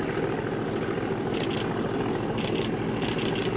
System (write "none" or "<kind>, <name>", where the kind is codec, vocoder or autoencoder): none